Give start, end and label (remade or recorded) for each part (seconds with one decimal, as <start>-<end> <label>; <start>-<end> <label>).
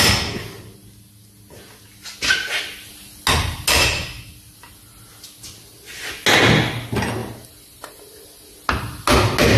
0.0-9.6 recorded